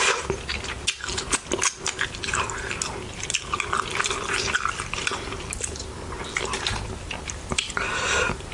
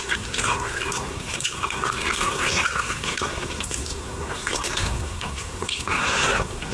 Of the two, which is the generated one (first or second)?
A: second